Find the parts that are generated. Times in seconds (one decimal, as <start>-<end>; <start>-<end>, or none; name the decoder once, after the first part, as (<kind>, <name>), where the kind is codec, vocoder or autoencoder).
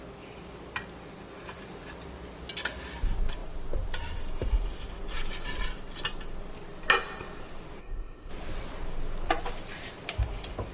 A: 7.8-8.3 (codec, ZipCodec)